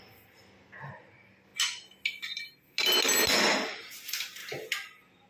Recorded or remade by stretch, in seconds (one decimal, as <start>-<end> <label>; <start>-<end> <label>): 0.0-5.3 recorded